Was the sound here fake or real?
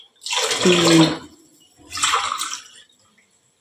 real